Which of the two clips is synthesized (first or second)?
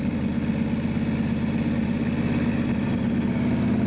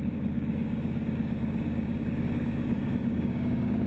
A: second